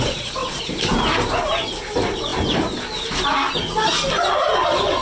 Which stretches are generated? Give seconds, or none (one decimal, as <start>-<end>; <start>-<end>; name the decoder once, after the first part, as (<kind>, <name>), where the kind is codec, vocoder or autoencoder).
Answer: none

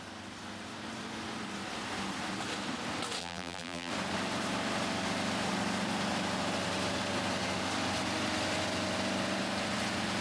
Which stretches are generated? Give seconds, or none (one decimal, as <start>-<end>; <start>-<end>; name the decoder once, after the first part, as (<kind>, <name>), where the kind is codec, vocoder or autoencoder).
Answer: 3.2-3.9 (vocoder, BigVGAN v2)

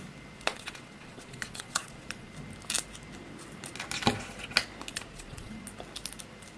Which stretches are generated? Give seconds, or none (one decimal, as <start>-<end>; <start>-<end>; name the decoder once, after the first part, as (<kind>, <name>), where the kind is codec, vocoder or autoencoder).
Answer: 0.5-2.3 (vocoder, Vocos); 4.9-5.6

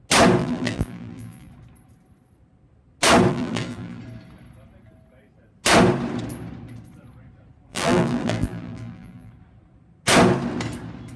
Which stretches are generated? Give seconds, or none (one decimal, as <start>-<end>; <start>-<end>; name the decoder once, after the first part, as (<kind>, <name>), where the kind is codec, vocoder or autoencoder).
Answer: 0.4-1.5 (vocoder, BigVGAN v2); 3.3-4.0; 7.7-9.3

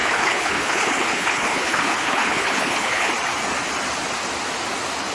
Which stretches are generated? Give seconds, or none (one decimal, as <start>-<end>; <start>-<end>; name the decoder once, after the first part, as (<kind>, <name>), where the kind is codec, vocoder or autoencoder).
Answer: 0.0-3.1 (codec, HILCodec)

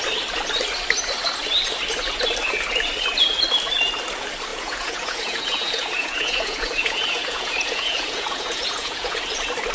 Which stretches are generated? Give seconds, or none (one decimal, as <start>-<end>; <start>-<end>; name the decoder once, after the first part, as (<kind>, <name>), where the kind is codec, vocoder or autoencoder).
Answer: 4.5-9.2 (vocoder, Vocos)

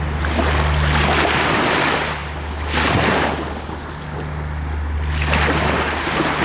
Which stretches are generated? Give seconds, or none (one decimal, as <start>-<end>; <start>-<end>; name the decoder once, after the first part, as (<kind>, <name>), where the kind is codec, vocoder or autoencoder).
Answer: none

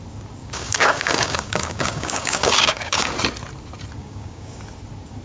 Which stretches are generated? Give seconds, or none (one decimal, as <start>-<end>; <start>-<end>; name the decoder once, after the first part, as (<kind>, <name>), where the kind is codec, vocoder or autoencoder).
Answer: 0.4-3.1 (codec, DAC); 4.0-4.6